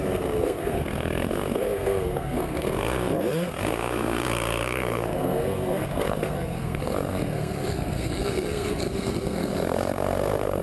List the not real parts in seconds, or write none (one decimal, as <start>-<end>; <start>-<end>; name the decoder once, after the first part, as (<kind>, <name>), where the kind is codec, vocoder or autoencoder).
0.0-10.6 (codec, SNAC)